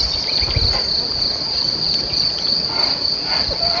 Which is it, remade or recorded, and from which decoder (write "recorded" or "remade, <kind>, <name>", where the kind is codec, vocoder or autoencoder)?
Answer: recorded